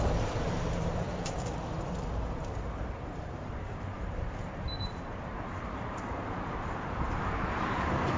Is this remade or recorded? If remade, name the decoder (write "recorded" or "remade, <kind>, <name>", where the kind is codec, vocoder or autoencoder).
remade, vocoder, BigVGAN v2